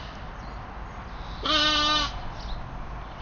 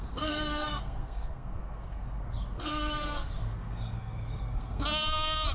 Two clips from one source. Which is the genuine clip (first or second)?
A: first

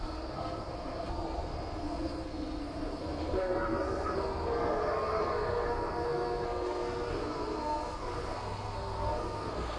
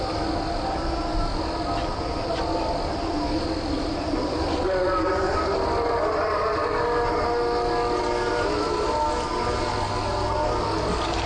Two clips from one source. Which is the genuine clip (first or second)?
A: second